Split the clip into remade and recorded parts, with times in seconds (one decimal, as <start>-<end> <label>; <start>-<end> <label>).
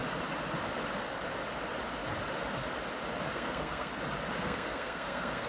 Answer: 0.0-3.3 recorded; 3.3-3.9 remade; 3.9-4.4 recorded; 4.4-5.5 remade